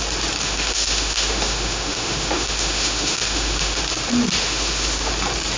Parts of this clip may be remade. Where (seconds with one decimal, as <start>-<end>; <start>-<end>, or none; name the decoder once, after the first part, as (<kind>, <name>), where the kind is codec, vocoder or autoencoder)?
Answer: 0.4-3.8 (autoencoder, DAC-VAE); 4.4-5.1